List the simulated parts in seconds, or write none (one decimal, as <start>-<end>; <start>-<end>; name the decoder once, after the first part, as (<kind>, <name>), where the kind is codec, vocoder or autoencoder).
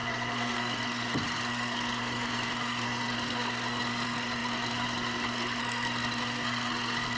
0.0-7.2 (codec, SNAC)